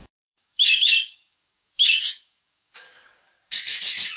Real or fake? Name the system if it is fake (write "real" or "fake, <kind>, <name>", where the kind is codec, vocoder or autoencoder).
fake, codec, DAC